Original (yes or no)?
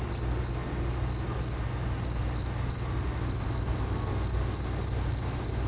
yes